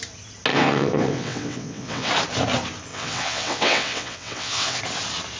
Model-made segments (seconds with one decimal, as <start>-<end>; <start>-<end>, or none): 0.5-2.1; 2.9-4.8